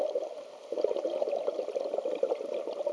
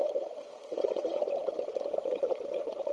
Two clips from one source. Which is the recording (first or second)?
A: first